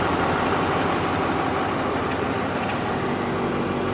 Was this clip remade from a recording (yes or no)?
no